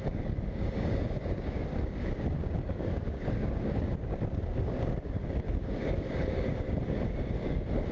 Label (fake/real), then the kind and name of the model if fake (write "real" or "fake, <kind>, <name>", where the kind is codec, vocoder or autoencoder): fake, codec, DAC